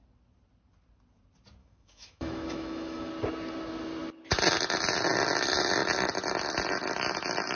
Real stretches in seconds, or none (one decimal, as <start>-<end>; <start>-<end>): 0.0-1.6; 3.1-7.6